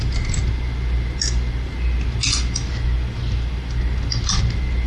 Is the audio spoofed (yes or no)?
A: no